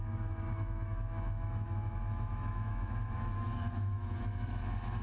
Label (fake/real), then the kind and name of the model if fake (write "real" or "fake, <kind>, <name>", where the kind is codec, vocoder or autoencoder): fake, autoencoder, DAC-VAE